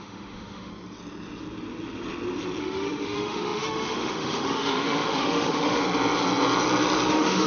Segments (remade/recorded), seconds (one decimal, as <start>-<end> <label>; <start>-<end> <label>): 0.0-0.7 remade; 0.7-2.6 recorded; 2.6-5.8 remade; 5.8-7.1 recorded; 7.1-7.5 remade